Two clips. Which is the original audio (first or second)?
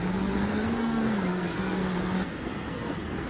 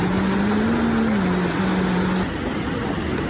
second